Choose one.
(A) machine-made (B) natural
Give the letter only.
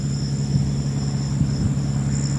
B